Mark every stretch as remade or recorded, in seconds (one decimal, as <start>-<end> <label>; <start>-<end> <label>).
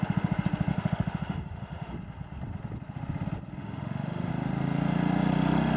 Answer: 0.0-0.7 recorded; 0.7-1.9 remade; 1.9-3.6 recorded; 3.6-4.3 remade; 4.3-5.8 recorded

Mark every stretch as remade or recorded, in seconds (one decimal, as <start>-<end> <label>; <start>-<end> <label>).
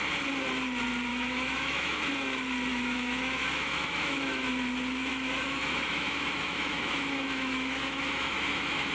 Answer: 0.0-1.1 recorded; 1.1-2.0 remade; 2.0-2.7 recorded; 2.7-4.5 remade; 4.5-5.1 recorded; 5.1-8.9 remade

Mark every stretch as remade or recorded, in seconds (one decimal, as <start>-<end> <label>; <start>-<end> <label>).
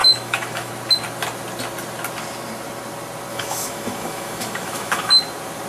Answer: 0.0-0.7 remade; 0.7-3.3 recorded; 3.3-5.1 remade; 5.1-5.7 recorded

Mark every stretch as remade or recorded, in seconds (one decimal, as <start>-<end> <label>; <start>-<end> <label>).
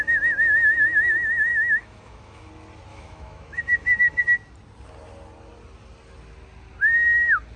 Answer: 0.0-1.5 recorded; 1.5-2.5 remade; 2.5-2.9 recorded; 2.9-4.2 remade; 4.2-7.6 recorded